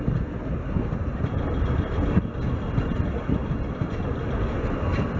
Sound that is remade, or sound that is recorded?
recorded